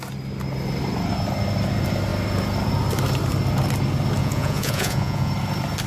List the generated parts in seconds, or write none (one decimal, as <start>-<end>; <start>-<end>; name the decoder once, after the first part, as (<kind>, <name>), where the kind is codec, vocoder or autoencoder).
4.2-5.3 (vocoder, Vocos)